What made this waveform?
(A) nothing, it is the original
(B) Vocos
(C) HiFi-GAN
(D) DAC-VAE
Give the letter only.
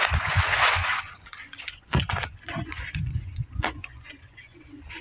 B